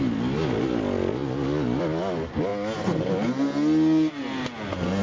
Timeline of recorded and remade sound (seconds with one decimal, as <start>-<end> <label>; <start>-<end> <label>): 0.0-5.0 recorded